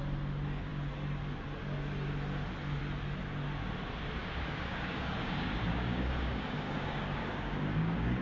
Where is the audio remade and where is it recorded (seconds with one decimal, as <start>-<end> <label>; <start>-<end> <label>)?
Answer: 0.0-4.2 recorded; 4.2-8.2 remade